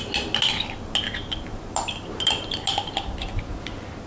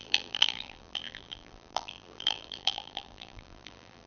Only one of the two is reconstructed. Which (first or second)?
second